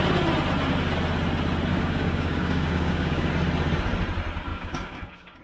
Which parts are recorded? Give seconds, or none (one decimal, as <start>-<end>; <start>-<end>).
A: 0.0-1.7; 3.3-4.5